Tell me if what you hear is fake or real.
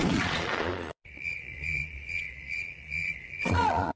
fake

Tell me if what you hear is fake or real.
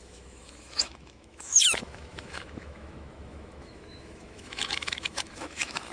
fake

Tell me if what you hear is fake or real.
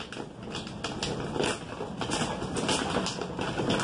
real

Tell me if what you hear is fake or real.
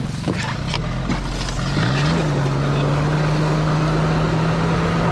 real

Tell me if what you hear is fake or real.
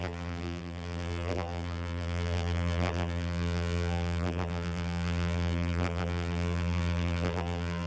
fake